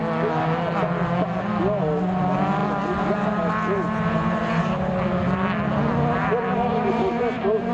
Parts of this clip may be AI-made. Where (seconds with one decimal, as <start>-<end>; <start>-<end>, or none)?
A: none